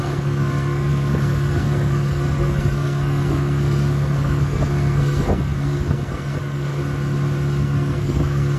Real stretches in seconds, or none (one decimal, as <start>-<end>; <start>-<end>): 6.8-7.6